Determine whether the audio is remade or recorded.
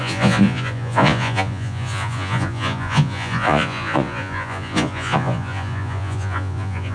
remade